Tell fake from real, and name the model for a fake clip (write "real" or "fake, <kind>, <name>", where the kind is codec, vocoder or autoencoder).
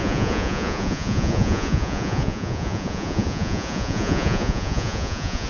fake, vocoder, Vocos